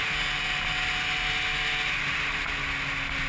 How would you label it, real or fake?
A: real